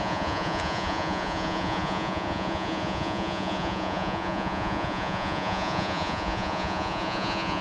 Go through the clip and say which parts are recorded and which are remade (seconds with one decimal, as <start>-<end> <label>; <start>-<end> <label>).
0.0-7.6 remade